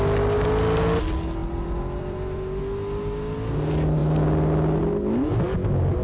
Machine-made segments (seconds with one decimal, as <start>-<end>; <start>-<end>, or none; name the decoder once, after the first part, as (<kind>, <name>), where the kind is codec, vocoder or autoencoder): 1.4-2.6 (vocoder, BigVGAN v2)